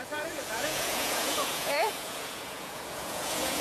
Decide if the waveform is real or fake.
fake